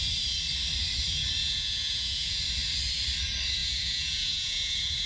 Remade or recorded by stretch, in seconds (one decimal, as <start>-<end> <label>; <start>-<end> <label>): 0.0-1.4 recorded; 1.4-2.4 remade; 2.4-3.6 recorded; 3.6-5.1 remade